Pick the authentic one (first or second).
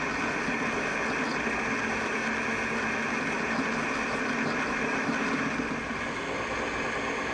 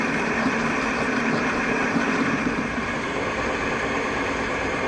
first